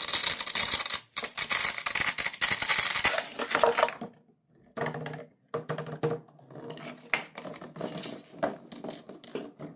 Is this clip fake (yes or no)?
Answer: no